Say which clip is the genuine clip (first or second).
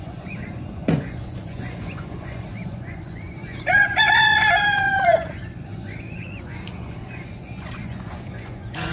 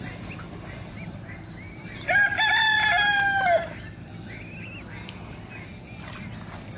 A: second